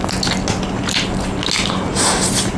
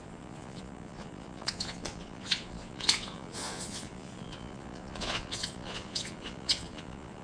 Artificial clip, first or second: second